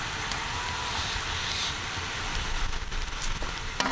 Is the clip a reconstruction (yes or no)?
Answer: no